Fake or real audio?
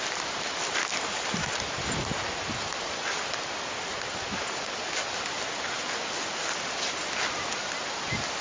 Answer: real